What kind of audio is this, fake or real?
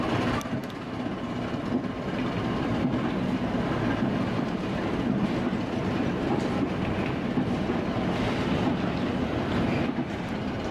real